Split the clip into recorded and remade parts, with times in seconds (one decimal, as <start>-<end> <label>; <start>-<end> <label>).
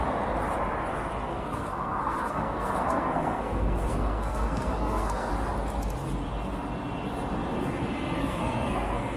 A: 0.0-1.3 recorded; 1.3-5.3 remade; 5.3-8.2 recorded; 8.2-9.2 remade